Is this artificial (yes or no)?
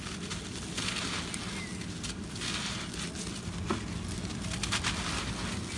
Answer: no